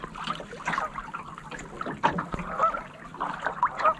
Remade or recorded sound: recorded